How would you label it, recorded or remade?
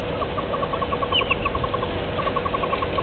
recorded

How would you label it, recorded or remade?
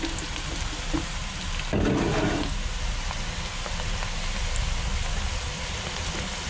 recorded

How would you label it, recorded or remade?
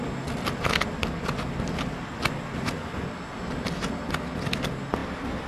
recorded